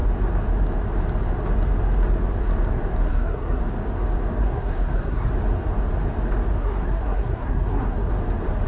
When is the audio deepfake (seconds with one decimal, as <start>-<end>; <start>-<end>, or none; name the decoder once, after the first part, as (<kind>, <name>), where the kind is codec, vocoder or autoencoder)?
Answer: 3.1-3.6 (codec, SNAC); 4.4-5.3; 6.6-8.1